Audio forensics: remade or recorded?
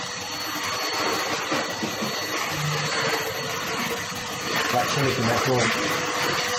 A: recorded